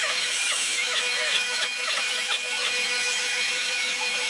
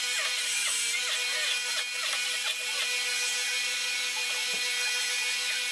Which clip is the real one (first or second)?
second